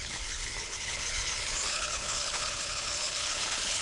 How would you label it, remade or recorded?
remade